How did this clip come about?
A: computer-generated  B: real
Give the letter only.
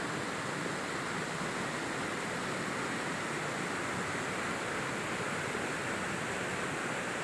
B